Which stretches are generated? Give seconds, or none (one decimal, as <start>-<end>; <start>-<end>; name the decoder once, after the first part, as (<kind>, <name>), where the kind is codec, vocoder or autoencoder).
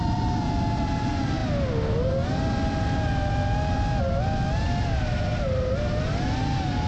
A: none